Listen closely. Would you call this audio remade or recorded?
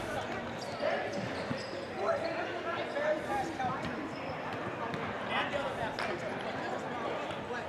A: recorded